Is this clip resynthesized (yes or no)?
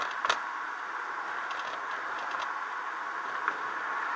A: no